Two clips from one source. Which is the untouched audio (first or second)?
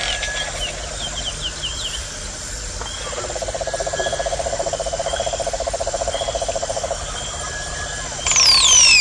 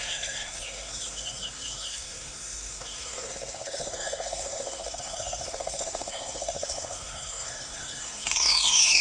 first